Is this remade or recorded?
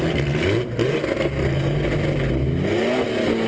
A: recorded